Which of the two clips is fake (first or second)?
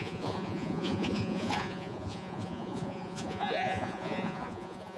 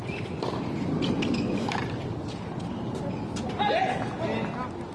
first